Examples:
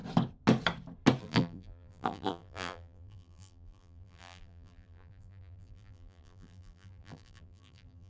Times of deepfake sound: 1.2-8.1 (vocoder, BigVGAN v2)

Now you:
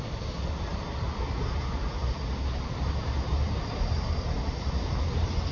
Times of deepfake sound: none

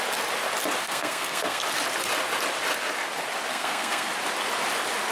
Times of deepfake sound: 0.8-1.6 (codec, SNAC); 3.5-4.1

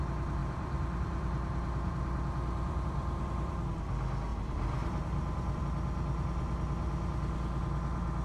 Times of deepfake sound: 0.4-3.7 (vocoder, BigVGAN v2); 4.3-5.6

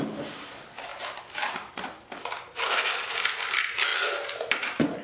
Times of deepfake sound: none

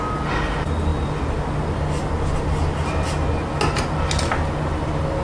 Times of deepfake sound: none

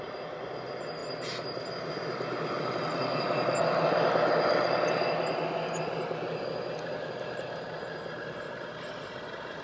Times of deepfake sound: none

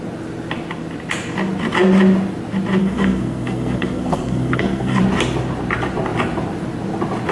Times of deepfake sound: 2.8-5.0 (codec, SNAC)